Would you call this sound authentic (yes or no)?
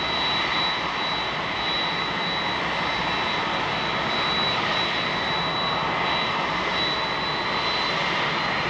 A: yes